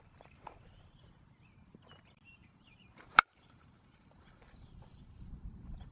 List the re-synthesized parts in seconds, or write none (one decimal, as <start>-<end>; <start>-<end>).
2.4-5.9